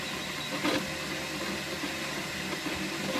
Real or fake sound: real